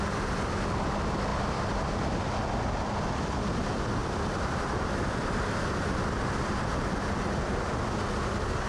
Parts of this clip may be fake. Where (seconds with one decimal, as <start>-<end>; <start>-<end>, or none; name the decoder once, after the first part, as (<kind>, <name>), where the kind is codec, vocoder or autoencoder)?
1.3-1.9 (vocoder, BigVGAN v2); 4.0-7.6